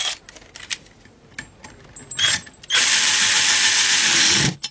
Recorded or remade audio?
recorded